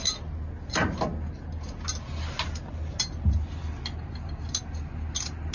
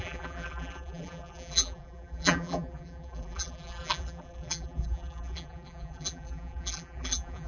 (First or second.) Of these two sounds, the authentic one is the first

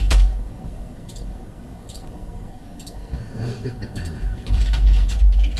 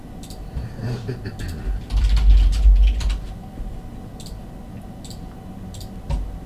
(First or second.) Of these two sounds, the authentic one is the second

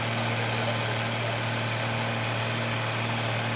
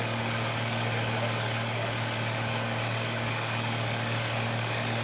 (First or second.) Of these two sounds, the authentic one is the first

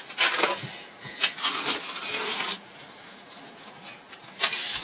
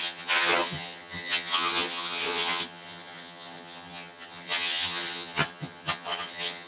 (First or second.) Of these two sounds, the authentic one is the first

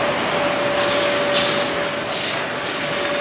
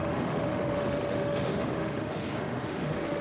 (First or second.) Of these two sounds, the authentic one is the first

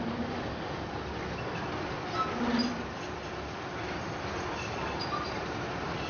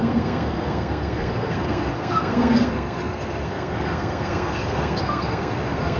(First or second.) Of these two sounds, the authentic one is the first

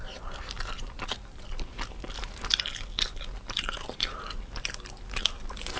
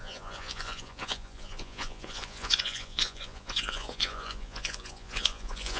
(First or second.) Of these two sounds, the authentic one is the first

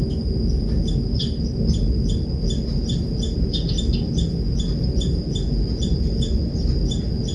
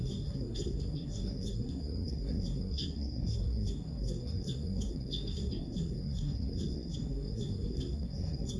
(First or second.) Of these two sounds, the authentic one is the first